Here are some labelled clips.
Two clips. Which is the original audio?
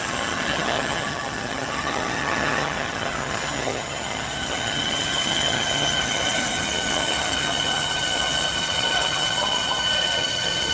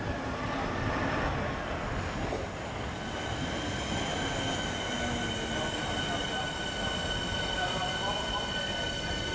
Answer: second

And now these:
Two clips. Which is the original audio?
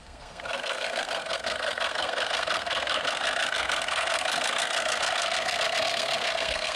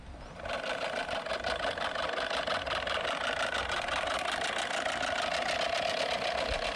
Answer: second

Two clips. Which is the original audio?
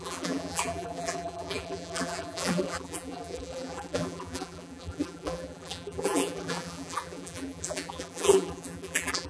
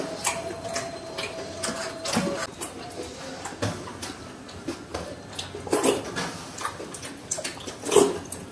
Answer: second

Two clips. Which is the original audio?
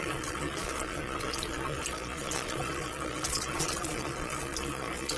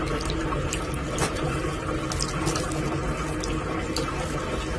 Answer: second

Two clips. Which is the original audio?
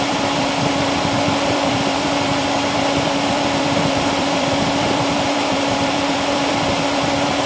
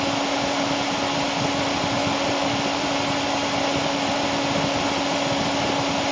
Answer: second